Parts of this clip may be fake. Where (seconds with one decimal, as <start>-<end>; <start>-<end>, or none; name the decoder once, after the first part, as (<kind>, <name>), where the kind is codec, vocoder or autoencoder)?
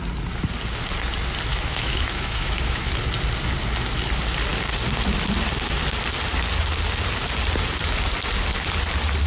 1.5-2.9 (autoencoder, DAC-VAE)